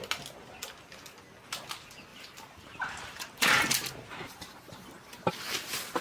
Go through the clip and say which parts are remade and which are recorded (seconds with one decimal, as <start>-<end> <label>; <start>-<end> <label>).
0.0-2.1 recorded; 2.1-5.3 remade; 5.3-6.0 recorded